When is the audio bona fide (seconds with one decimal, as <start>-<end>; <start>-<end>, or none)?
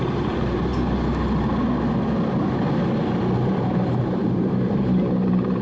0.7-3.5